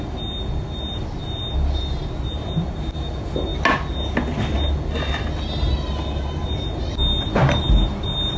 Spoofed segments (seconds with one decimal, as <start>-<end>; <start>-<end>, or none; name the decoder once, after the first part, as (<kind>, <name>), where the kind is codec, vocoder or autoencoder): none